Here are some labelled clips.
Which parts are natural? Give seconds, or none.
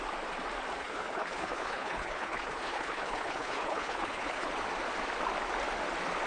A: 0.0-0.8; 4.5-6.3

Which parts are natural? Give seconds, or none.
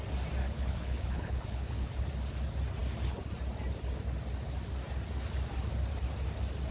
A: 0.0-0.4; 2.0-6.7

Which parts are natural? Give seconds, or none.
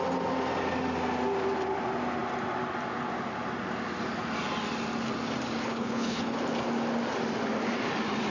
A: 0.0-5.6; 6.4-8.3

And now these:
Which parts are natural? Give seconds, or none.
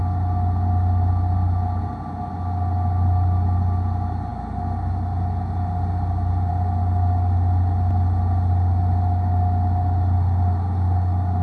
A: 0.0-11.4